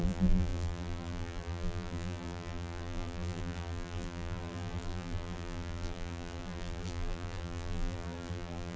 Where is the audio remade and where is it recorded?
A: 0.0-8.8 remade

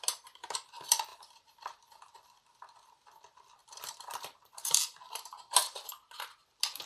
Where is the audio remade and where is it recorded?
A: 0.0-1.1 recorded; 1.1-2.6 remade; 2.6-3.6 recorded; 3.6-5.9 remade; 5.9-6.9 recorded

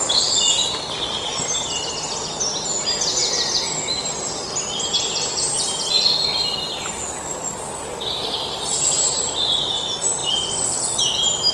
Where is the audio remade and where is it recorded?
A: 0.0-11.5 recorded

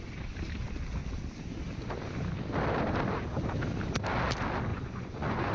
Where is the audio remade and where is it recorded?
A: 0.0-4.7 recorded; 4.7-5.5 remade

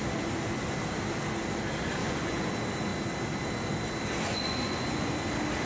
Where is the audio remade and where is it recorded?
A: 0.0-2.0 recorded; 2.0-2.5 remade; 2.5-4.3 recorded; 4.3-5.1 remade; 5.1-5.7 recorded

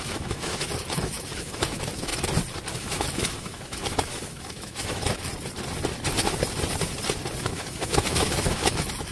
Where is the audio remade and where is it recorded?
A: 0.0-2.1 remade; 2.1-2.7 recorded; 2.7-5.3 remade; 5.3-7.4 recorded; 7.4-9.1 remade